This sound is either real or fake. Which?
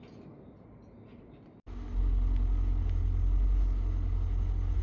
real